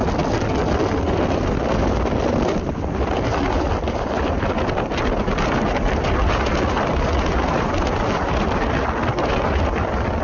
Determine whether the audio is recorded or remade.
recorded